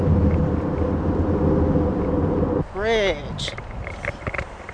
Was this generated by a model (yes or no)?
no